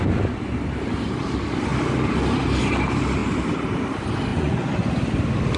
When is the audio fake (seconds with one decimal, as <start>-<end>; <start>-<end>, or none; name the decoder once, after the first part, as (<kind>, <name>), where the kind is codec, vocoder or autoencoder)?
4.3-4.9 (vocoder, Vocos)